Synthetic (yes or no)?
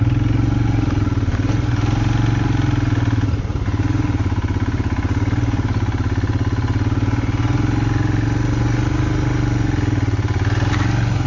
no